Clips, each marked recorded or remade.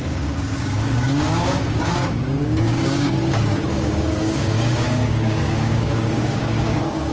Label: remade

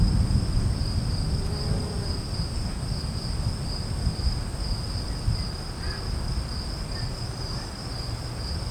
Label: recorded